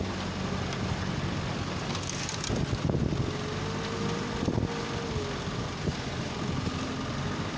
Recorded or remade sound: recorded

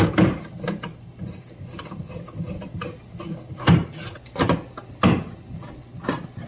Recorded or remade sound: recorded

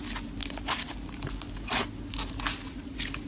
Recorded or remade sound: recorded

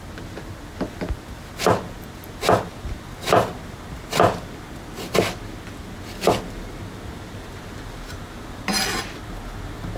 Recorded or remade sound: recorded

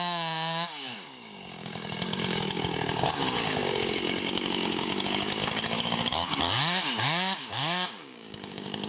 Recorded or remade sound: remade